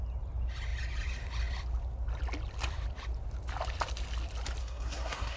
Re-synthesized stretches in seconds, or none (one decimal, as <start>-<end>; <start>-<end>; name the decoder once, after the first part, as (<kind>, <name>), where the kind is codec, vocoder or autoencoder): 4.6-5.4 (codec, SNAC)